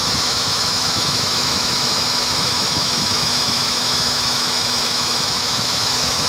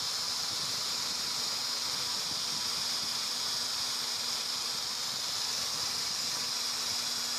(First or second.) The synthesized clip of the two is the first